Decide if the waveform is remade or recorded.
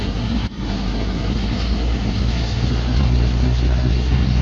remade